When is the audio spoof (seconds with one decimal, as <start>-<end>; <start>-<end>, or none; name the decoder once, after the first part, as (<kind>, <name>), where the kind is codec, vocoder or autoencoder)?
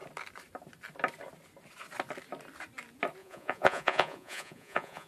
3.2-5.1 (vocoder, Vocos)